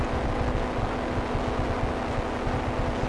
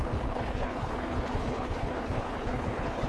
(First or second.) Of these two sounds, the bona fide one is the first